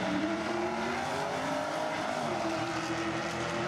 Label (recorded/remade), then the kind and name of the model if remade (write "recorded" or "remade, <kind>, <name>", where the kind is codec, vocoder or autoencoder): remade, vocoder, BigVGAN v2